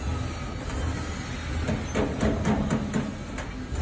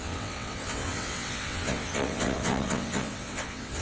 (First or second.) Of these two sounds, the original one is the first